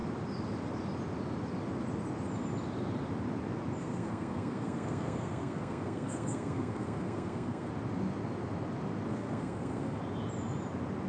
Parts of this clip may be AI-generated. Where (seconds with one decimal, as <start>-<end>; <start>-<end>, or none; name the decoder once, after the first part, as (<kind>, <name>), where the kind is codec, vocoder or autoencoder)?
3.8-7.7 (codec, SNAC); 9.1-10.0